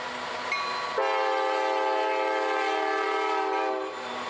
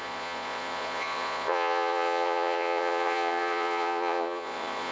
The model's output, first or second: second